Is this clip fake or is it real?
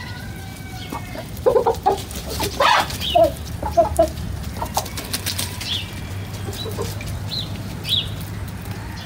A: real